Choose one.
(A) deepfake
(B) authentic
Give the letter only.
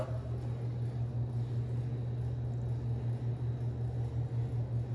B